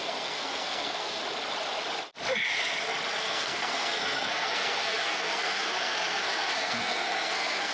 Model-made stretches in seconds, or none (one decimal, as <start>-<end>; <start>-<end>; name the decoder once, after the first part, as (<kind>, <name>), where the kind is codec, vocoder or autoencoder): 0.0-1.2 (codec, SNAC); 3.2-7.7